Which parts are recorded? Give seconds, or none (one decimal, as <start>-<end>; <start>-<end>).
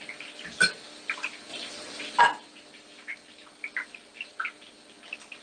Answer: 0.0-1.5; 2.2-5.4